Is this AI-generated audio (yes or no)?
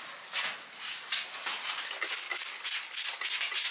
no